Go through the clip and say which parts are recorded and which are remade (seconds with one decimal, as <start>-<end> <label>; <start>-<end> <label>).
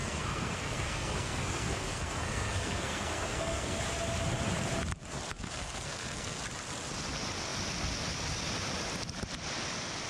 0.0-3.8 remade; 3.8-5.3 recorded; 5.3-6.4 remade; 6.4-10.1 recorded